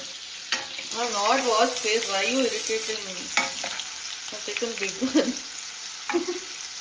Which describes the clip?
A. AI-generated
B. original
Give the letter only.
B